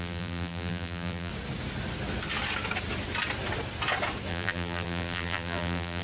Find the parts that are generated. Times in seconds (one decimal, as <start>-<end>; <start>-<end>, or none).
0.0-1.3; 4.3-6.0